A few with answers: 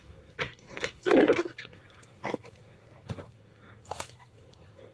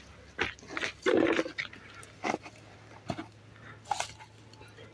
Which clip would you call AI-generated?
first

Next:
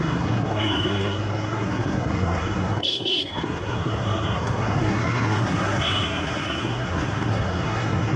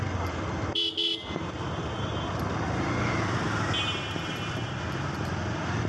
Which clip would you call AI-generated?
first